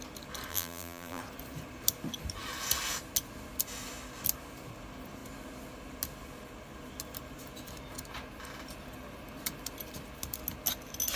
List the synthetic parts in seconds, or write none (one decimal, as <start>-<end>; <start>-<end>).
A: 0.5-1.2